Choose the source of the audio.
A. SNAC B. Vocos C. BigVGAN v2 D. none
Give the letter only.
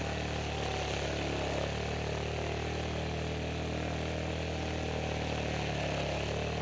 D